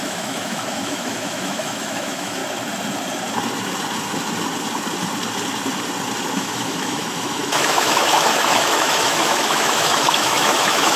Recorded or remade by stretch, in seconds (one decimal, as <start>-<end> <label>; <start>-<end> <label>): 0.0-2.4 remade; 2.4-6.4 recorded; 6.4-11.0 remade